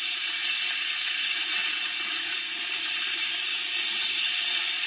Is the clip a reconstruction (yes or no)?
yes